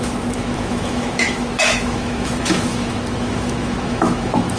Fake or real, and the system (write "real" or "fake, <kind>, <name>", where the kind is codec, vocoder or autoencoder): fake, autoencoder, DAC-VAE